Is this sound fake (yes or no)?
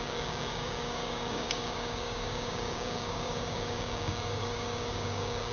yes